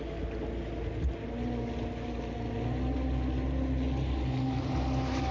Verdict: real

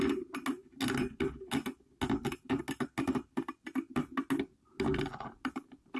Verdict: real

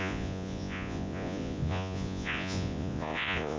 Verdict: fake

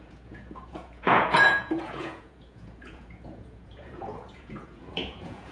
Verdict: fake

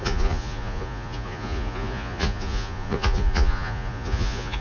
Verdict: fake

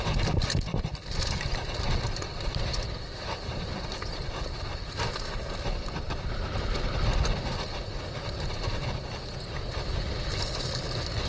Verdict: real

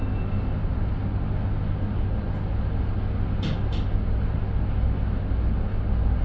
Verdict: real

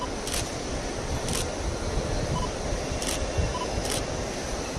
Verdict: real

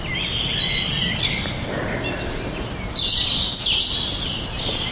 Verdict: real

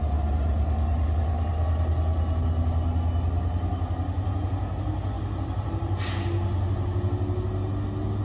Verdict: real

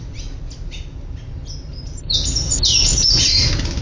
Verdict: real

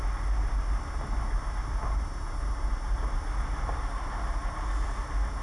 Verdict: real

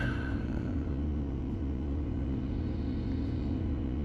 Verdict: fake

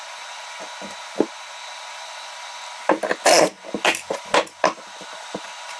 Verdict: real